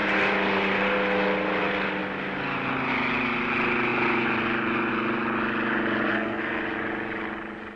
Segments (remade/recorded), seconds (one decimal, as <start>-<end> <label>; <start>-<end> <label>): 0.0-6.1 recorded; 6.1-6.6 remade; 6.6-7.8 recorded